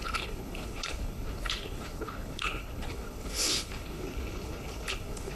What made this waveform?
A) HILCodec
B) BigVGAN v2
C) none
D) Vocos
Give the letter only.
A